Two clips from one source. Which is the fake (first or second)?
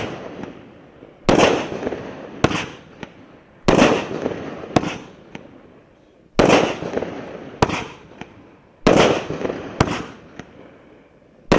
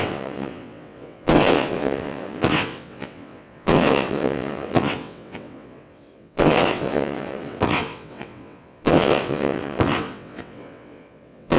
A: second